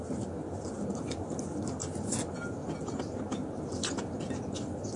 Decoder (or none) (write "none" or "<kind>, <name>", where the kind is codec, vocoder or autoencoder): none